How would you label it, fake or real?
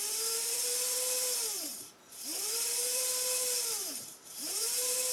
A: fake